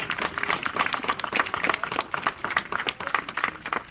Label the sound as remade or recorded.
recorded